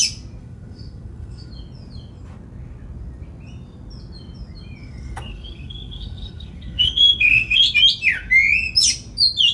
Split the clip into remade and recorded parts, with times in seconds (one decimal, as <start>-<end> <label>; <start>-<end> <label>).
0.0-0.4 recorded; 0.4-1.5 remade; 1.5-4.8 recorded; 4.8-7.6 remade; 7.6-9.5 recorded